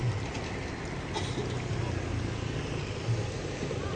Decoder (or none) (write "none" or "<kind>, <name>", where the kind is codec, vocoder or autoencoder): none